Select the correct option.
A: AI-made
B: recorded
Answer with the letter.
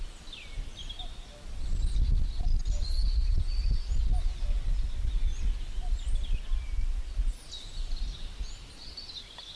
B